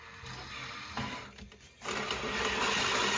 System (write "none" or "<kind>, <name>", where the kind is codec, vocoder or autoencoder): none